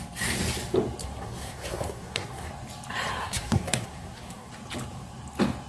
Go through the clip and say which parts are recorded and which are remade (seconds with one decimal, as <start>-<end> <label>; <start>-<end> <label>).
0.0-1.0 recorded; 1.0-2.5 remade; 2.5-3.2 recorded; 3.2-4.5 remade; 4.5-5.7 recorded

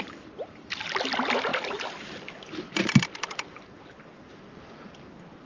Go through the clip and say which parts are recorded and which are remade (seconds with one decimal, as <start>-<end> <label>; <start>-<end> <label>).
0.0-5.5 recorded

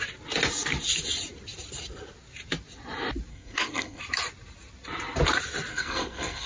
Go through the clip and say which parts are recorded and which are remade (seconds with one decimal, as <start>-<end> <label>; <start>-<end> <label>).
0.0-3.3 recorded; 3.3-4.0 remade; 4.0-5.7 recorded; 5.7-6.5 remade

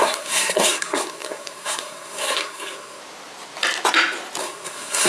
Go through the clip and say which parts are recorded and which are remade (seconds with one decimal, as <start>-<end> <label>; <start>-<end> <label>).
0.0-3.0 remade; 3.0-4.4 recorded; 4.4-5.1 remade

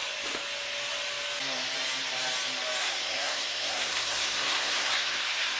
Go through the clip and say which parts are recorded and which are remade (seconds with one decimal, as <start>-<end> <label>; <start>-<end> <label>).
0.0-2.8 recorded; 2.8-5.6 remade